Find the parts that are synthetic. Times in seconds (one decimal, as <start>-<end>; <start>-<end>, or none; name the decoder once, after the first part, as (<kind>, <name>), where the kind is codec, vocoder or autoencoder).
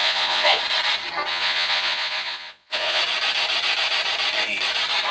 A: 0.0-0.6 (vocoder, Vocos); 1.3-3.0